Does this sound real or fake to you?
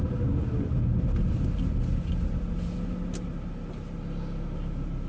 real